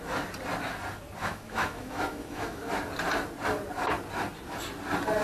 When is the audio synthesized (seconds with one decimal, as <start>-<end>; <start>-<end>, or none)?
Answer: 1.2-2.7